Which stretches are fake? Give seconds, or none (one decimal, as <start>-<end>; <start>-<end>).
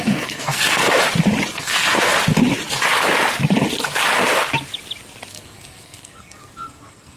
0.0-0.8; 1.5-2.1; 5.3-7.2